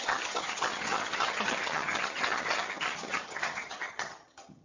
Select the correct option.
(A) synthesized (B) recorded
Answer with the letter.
A